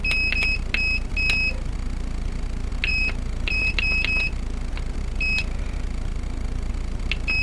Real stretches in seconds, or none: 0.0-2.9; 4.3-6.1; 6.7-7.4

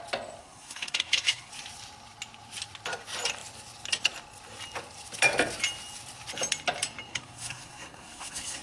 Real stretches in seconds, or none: 0.0-0.4; 1.5-7.1

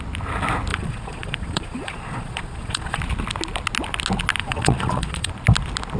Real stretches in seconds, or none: 0.0-0.7; 3.0-4.4; 5.3-6.0